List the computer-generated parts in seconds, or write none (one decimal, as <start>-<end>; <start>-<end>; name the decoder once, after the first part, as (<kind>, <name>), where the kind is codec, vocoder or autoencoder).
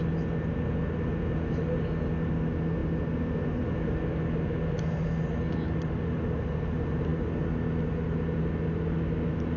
none